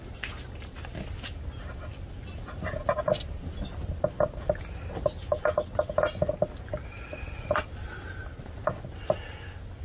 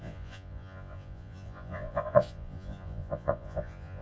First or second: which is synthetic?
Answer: second